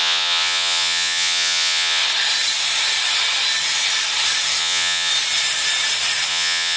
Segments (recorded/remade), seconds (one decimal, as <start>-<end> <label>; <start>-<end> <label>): 0.0-2.0 remade; 2.0-4.6 recorded; 4.6-5.1 remade; 5.1-6.3 recorded; 6.3-6.8 remade